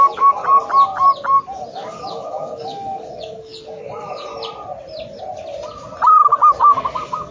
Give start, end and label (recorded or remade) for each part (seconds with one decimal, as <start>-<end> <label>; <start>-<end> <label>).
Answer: 0.0-0.4 remade; 0.4-1.7 recorded; 1.7-4.3 remade; 4.3-6.6 recorded; 6.6-7.3 remade